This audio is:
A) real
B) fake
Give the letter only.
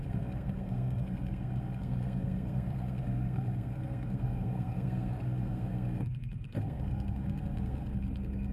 B